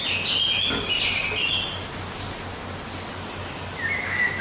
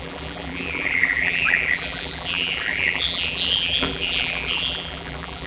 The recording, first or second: first